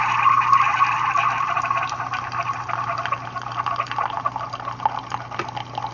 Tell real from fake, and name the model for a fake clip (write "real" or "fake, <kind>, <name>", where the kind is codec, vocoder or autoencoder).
real